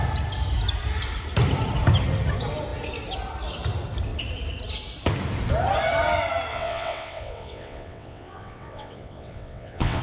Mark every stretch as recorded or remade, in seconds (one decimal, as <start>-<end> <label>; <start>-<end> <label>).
0.0-6.5 recorded; 6.5-10.0 remade